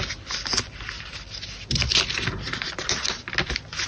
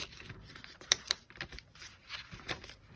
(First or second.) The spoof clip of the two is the second